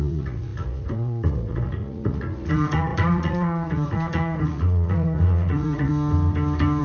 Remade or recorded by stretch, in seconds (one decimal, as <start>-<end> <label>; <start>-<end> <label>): 0.0-5.9 remade; 5.9-6.8 recorded